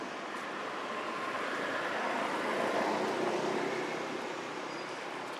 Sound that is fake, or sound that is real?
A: real